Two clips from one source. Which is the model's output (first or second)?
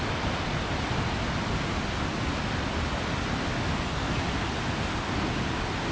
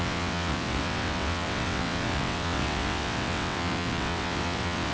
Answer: second